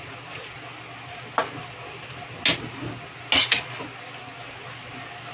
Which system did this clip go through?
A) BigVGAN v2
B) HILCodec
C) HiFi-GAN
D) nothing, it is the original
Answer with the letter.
D